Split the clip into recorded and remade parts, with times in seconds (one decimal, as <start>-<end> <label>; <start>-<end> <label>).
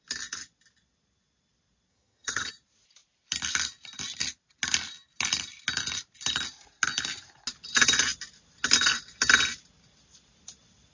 0.0-1.9 recorded; 1.9-2.5 remade; 2.5-10.9 recorded